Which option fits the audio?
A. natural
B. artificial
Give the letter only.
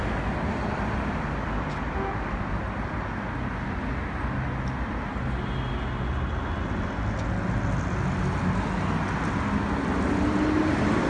A